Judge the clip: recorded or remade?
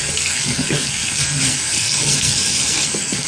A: remade